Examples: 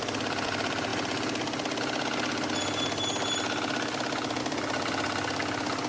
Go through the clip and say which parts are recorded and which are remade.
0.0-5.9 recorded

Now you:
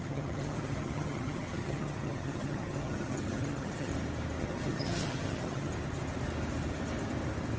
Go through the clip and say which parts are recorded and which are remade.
0.0-3.9 remade; 3.9-4.4 recorded; 4.4-5.7 remade; 5.7-7.6 recorded